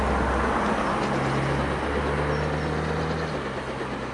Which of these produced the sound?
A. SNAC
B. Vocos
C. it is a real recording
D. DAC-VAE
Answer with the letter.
C